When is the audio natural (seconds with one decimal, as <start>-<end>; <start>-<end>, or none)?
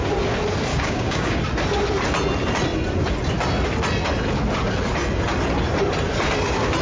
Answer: 0.0-0.7; 1.4-6.8